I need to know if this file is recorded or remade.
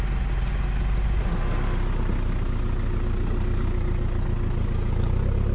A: recorded